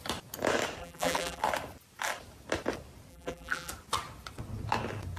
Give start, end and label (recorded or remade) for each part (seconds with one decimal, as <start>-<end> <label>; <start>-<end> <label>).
0.0-0.8 recorded; 0.8-1.4 remade; 1.4-3.1 recorded; 3.1-3.7 remade; 3.7-5.2 recorded